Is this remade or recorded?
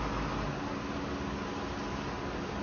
recorded